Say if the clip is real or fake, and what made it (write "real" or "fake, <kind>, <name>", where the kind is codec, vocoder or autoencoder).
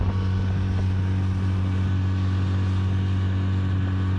real